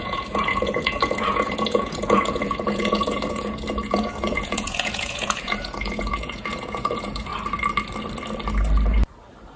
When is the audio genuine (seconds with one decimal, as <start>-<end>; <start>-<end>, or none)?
7.3-9.6